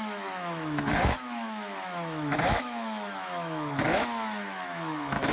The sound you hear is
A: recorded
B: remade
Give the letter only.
B